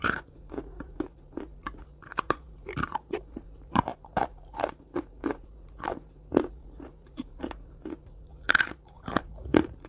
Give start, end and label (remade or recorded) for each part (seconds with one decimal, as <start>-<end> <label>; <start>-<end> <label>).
0.0-9.9 remade

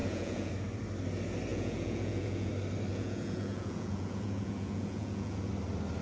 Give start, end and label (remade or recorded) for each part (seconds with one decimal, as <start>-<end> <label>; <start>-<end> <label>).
0.0-0.5 remade; 0.5-1.5 recorded; 1.5-2.5 remade; 2.5-2.9 recorded; 2.9-5.5 remade; 5.5-6.0 recorded

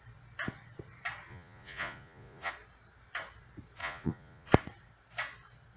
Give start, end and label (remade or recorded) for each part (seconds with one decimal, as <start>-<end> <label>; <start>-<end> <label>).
0.0-1.3 recorded; 1.3-2.5 remade; 2.5-3.8 recorded; 3.8-4.5 remade; 4.5-5.8 recorded

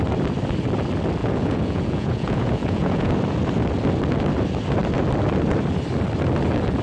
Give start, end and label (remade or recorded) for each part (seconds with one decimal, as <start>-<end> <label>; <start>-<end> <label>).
0.0-1.2 recorded; 1.2-3.1 remade; 3.1-6.8 recorded

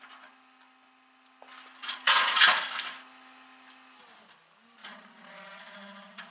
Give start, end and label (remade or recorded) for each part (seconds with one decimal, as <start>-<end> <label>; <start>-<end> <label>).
0.0-1.8 recorded; 1.8-2.4 remade; 2.4-4.8 recorded; 4.8-6.3 remade

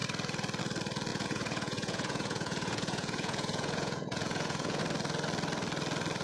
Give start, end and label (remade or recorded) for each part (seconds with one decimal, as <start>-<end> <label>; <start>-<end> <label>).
0.0-1.1 recorded; 1.1-4.8 remade; 4.8-6.2 recorded

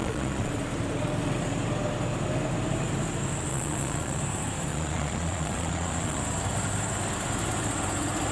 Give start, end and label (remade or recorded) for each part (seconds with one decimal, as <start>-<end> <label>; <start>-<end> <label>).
0.0-0.5 remade; 0.5-3.5 recorded; 3.5-4.2 remade; 4.2-4.7 recorded; 4.7-6.2 remade; 6.2-8.3 recorded

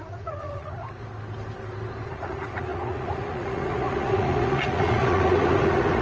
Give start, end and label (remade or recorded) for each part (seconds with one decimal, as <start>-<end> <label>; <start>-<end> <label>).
0.0-1.0 remade; 1.0-2.0 recorded; 2.0-6.0 remade